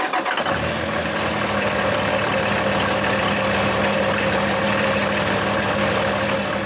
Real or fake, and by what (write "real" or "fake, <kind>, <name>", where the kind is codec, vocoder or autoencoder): real